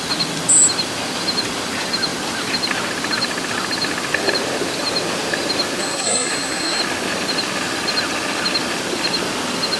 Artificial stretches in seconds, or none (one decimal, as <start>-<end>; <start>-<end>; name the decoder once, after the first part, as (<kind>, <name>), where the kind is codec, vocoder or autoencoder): 5.8-6.8 (codec, SNAC)